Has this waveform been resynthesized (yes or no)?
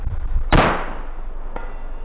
no